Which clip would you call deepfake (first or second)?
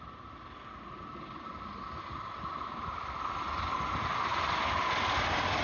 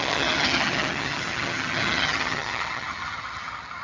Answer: second